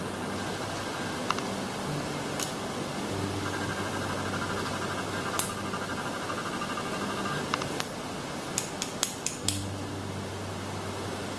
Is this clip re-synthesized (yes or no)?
no